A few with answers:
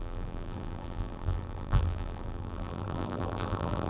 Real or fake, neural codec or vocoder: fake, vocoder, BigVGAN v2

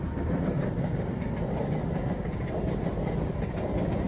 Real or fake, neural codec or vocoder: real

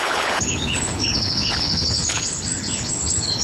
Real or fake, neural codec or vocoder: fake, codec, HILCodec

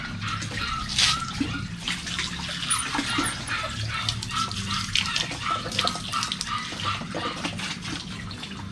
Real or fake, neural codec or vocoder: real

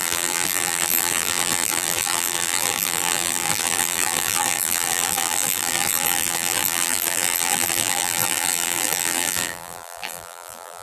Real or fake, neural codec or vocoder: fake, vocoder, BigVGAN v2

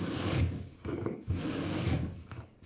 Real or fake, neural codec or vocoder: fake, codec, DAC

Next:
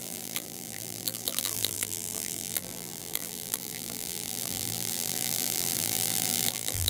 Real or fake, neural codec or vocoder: fake, vocoder, BigVGAN v2